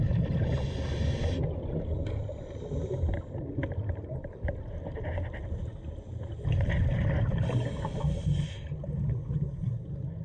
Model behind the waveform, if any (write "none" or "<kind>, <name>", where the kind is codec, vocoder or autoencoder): none